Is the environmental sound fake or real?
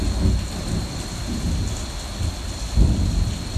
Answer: real